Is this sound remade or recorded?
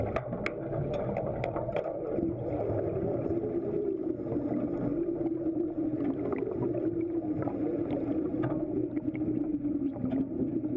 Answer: recorded